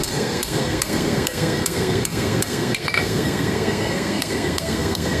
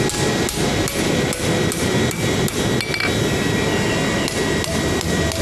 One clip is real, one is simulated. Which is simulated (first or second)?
first